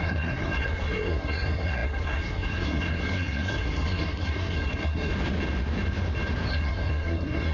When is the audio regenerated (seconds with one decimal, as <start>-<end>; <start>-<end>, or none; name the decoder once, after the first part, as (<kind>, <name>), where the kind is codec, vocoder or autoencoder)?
0.0-5.1 (codec, SNAC); 6.5-7.5